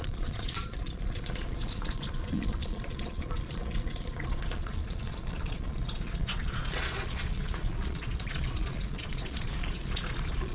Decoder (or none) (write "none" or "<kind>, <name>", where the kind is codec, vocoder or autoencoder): vocoder, Vocos